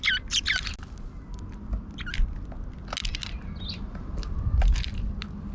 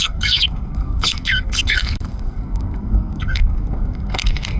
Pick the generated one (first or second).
second